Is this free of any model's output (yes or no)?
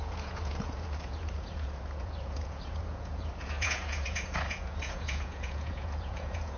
no